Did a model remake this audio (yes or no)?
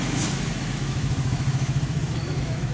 yes